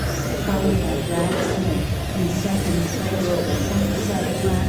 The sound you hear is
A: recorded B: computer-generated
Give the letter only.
A